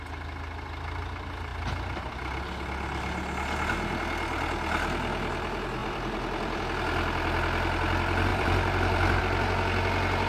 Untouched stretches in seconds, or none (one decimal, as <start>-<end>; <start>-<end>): 0.0-1.5; 2.1-5.8; 6.6-8.3; 9.2-10.3